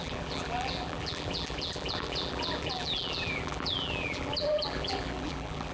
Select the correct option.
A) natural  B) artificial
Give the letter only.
B